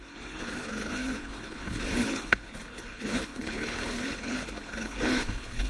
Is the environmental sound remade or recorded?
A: remade